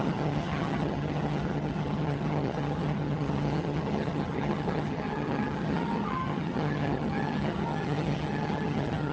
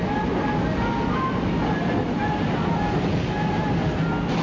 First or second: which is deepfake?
first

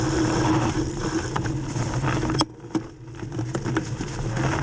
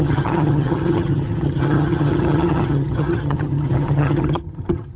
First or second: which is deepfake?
second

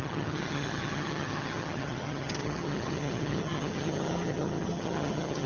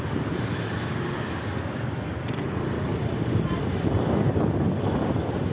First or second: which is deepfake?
first